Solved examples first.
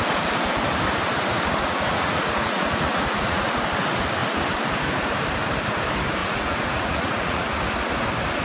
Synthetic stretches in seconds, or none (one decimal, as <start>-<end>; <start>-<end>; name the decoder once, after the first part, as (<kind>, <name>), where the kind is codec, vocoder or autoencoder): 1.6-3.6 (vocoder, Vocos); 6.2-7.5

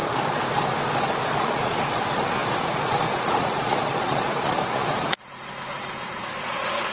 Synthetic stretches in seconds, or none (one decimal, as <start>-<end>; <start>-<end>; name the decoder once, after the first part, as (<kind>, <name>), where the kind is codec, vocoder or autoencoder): 1.4-6.9 (vocoder, Vocos)

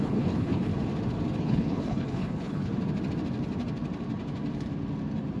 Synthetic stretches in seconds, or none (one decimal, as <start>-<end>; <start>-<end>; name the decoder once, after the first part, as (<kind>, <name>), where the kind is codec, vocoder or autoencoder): 0.0-0.7 (codec, HILCodec); 1.4-2.7

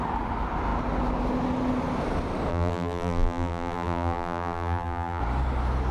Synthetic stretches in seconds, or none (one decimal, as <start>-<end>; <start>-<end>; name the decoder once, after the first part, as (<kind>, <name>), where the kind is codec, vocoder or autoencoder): 2.5-5.2 (vocoder, BigVGAN v2)

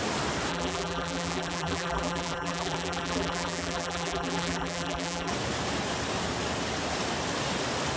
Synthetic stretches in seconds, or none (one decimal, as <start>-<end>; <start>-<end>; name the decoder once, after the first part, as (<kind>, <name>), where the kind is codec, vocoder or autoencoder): 0.5-5.3 (vocoder, BigVGAN v2)

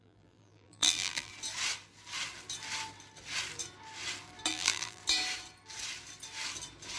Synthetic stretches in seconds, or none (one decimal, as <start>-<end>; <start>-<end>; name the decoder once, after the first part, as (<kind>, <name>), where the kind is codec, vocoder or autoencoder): 0.0-1.3 (vocoder, BigVGAN v2); 4.5-5.0

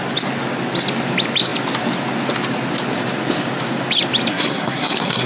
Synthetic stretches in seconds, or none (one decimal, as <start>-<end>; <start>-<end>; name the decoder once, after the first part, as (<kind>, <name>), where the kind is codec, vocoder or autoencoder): 4.3-5.3 (codec, SNAC)

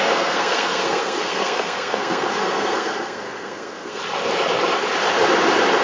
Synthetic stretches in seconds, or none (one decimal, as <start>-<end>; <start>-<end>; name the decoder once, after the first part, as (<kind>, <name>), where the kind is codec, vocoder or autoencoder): 0.0-4.0 (codec, SNAC)